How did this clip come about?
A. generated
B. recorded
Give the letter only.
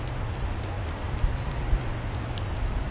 B